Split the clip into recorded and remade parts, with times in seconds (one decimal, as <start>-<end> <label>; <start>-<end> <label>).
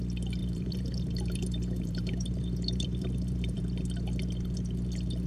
0.0-0.4 recorded; 0.4-3.6 remade; 3.6-5.3 recorded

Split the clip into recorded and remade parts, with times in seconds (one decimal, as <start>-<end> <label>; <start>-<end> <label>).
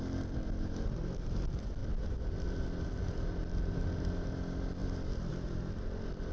0.0-1.8 recorded; 1.8-3.0 remade; 3.0-6.3 recorded